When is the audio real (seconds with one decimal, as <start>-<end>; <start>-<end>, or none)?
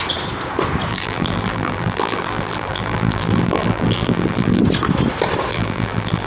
0.0-0.9; 4.6-5.5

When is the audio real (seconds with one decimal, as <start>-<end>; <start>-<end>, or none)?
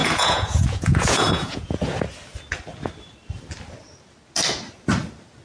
2.0-5.4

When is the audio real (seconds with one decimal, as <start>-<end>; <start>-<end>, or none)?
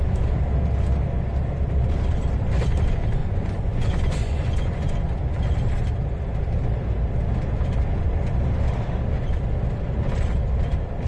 0.0-3.2; 5.0-11.1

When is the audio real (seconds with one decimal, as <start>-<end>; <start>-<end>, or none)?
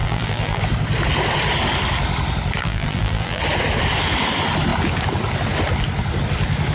0.6-2.6; 3.4-6.7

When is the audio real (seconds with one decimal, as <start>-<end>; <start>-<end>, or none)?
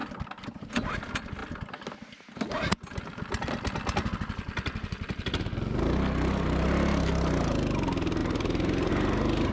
0.9-8.2; 8.9-9.5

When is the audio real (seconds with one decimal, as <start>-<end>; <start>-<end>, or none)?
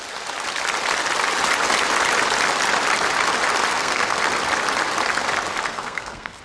0.0-3.7; 4.2-5.7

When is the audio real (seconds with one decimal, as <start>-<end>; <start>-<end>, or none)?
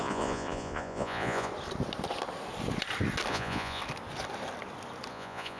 1.5-3.3; 3.8-5.1